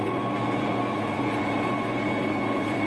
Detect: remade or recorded remade